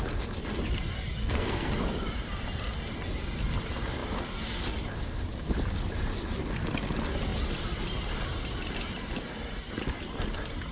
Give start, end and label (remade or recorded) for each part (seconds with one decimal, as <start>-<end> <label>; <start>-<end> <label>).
0.0-1.2 recorded; 1.2-1.7 remade; 1.7-10.7 recorded